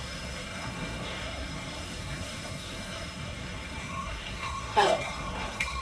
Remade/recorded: remade